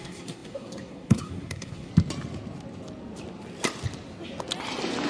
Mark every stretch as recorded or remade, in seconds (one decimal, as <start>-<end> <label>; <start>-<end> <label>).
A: 0.0-1.9 remade; 1.9-5.1 recorded